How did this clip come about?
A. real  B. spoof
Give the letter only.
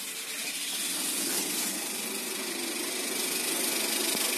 A